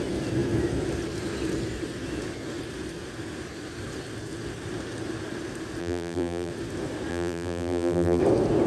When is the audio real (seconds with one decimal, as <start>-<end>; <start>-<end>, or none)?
0.0-5.8; 6.5-7.1; 8.2-8.7